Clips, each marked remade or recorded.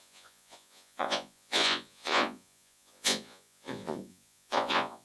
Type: remade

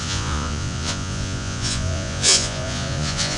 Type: remade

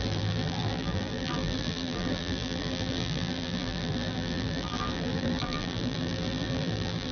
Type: remade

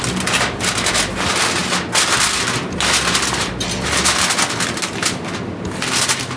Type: recorded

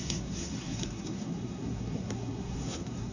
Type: remade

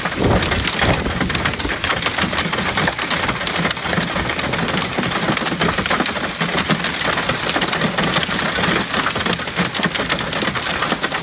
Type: recorded